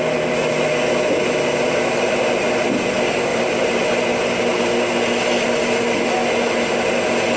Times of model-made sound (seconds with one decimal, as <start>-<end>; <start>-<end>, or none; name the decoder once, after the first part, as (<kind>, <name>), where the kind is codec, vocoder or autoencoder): 3.3-4.6 (vocoder, BigVGAN v2)